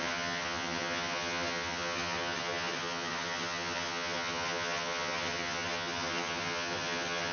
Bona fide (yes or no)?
no